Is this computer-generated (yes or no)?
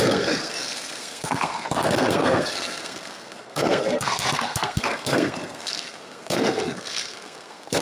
yes